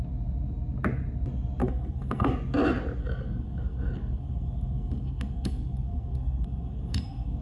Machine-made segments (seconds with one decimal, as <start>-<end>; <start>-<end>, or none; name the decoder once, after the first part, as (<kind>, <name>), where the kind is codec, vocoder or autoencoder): 1.6-2.3 (codec, SNAC); 3.0-7.4